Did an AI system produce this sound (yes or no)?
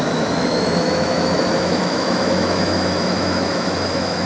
yes